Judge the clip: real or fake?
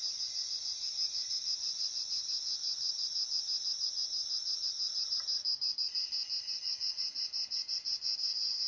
real